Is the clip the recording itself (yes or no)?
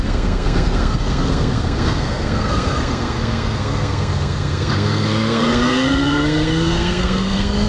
no